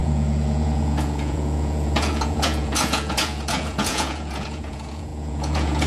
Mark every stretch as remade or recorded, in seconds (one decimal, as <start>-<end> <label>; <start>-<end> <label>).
0.0-5.9 remade